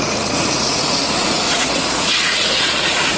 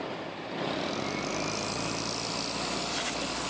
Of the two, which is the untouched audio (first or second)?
second